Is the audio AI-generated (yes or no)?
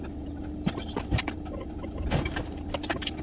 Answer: yes